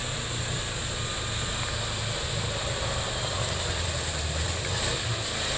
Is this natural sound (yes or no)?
yes